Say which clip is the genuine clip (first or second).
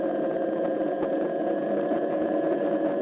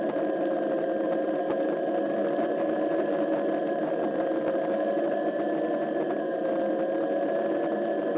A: second